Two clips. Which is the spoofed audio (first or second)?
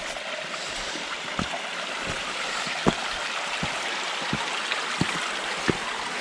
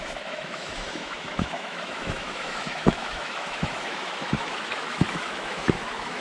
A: second